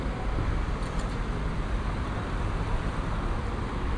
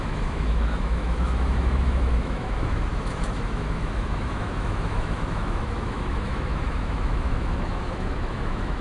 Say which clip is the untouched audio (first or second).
first